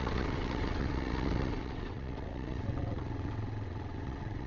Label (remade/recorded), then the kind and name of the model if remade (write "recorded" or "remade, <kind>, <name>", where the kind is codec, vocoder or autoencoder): remade, vocoder, WaveNeXt